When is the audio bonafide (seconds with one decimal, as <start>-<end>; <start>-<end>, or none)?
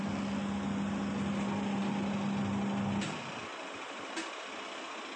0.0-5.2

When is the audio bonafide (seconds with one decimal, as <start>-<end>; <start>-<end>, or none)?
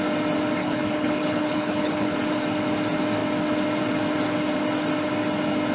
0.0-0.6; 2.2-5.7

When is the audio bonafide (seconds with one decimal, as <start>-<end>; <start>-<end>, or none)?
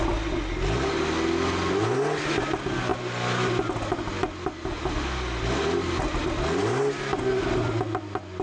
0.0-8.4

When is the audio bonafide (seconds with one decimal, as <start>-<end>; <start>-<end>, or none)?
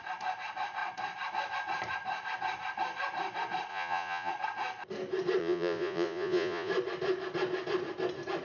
0.0-3.7; 4.3-5.4; 6.7-8.4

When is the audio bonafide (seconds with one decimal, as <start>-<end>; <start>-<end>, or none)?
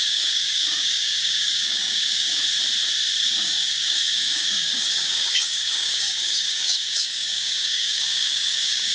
2.4-3.2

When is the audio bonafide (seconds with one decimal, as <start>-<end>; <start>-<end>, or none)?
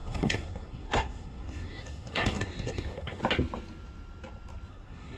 3.2-4.7